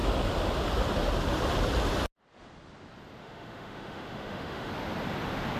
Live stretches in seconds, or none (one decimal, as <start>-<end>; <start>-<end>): 0.0-3.2; 4.7-5.6